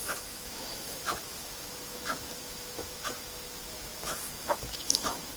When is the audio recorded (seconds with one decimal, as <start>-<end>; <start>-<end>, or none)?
none